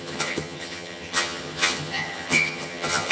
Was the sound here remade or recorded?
remade